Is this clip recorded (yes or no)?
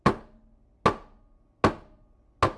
yes